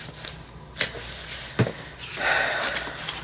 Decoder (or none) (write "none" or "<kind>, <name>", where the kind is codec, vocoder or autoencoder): none